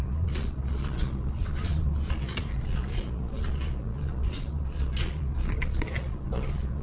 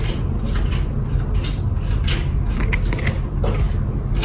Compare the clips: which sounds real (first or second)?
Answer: second